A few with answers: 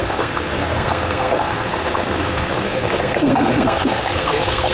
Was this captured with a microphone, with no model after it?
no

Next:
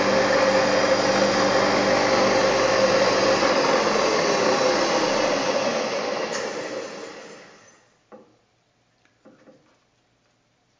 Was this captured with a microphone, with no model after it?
yes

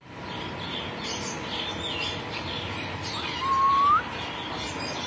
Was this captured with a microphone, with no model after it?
yes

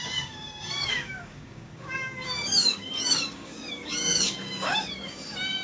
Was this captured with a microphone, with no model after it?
no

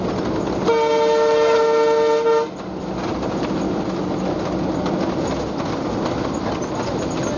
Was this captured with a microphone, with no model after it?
yes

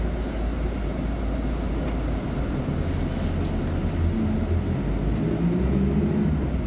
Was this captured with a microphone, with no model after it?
yes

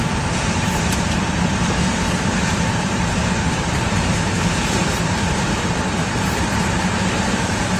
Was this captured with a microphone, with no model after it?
no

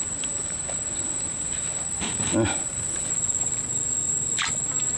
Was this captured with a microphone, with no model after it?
yes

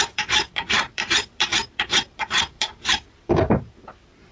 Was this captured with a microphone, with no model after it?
no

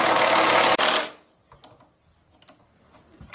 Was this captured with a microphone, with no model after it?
yes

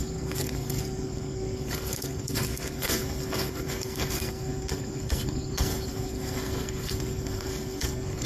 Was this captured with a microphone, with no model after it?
no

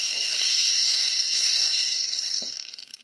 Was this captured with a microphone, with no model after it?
no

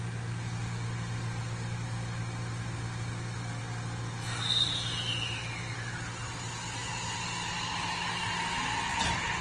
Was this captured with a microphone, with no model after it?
yes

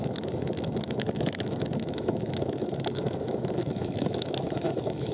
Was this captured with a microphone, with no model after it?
no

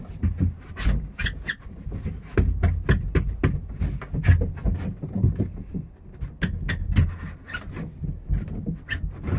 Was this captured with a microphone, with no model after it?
yes